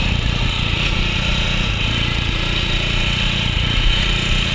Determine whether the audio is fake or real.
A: fake